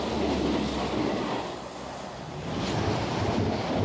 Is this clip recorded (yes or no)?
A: yes